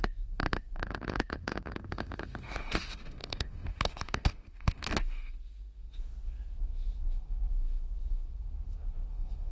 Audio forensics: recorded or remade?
remade